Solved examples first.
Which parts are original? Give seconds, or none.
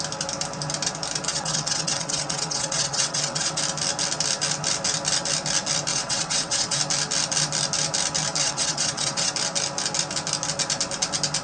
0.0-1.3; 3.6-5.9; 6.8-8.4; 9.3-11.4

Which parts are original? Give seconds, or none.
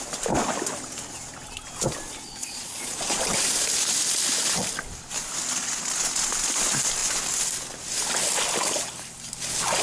0.0-2.4; 3.2-9.8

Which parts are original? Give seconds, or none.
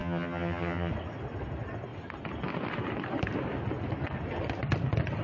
0.9-5.2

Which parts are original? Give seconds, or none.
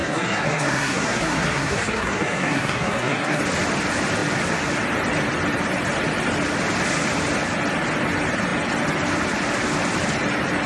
3.4-10.7